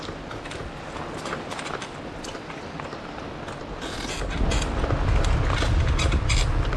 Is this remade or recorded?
recorded